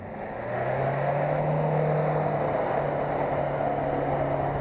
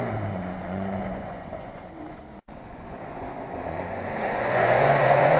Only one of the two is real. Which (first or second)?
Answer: first